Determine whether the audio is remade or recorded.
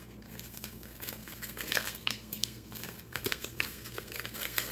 remade